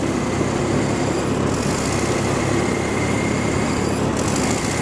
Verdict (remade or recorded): recorded